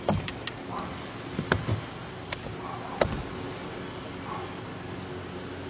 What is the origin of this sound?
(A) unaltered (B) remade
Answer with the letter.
A